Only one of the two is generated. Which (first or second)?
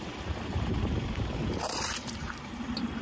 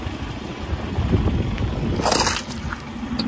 first